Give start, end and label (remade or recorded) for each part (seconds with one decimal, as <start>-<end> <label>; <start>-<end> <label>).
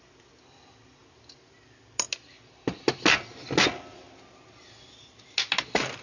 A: 0.0-6.0 recorded